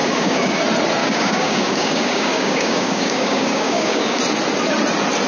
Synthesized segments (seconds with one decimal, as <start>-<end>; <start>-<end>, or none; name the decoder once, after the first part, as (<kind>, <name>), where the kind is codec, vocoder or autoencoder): 0.0-0.6 (codec, DAC); 1.0-4.2

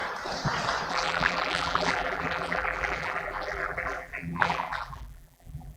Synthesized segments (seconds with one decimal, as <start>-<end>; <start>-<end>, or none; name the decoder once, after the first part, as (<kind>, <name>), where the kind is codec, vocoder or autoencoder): 0.9-5.8 (vocoder, BigVGAN v2)

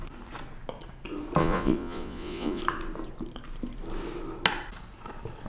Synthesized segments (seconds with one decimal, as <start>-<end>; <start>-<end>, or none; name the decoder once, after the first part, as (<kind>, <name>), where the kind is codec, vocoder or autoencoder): 1.4-2.6 (vocoder, Vocos)

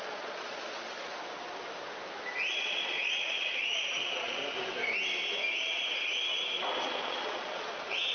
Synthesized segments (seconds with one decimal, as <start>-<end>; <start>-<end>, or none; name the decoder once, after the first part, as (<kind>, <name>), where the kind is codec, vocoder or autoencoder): 0.0-1.1 (vocoder, Vocos); 2.5-4.4; 6.8-8.1

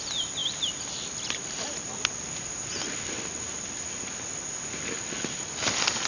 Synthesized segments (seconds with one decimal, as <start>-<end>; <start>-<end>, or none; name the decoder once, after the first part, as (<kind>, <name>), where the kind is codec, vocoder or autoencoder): none